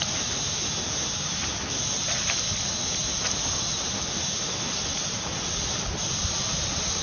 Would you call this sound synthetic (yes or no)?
no